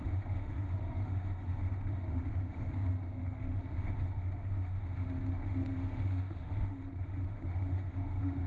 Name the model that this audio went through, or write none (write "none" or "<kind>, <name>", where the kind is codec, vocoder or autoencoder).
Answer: autoencoder, DAC-VAE